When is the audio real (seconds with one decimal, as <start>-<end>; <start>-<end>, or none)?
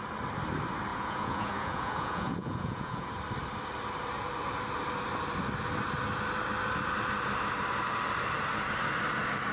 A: 0.0-0.9; 3.1-9.5